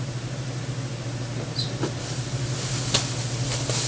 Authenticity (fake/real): real